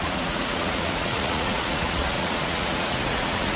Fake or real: fake